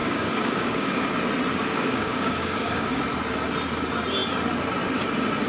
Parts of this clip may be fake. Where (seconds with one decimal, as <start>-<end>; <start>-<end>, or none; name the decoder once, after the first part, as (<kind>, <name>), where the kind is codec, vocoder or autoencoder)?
0.0-1.1 (codec, DAC); 1.5-3.0